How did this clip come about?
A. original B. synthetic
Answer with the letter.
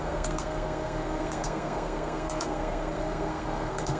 B